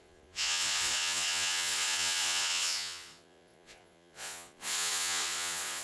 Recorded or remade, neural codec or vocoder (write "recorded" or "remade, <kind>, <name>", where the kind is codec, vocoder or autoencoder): remade, vocoder, Vocos